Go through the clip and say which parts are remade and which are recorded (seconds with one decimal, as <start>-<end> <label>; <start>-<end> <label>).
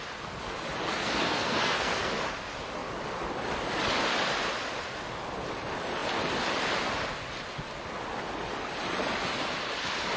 0.0-0.9 recorded; 0.9-2.1 remade; 2.1-10.2 recorded